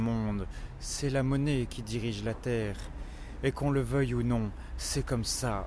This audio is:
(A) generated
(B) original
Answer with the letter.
B